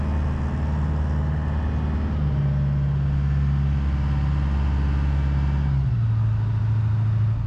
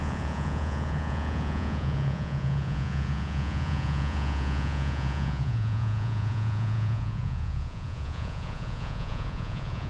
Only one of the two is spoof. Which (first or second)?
second